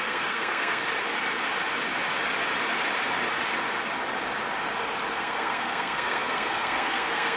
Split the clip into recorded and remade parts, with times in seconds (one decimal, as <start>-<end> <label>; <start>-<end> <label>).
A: 0.0-0.8 remade; 0.8-5.1 recorded; 5.1-7.4 remade